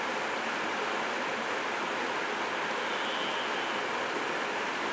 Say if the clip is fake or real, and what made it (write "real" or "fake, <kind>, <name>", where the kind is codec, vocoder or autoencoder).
real